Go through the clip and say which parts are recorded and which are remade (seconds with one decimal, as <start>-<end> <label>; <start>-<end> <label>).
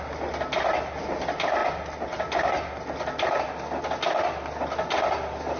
0.0-5.6 recorded